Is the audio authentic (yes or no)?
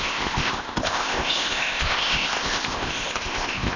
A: no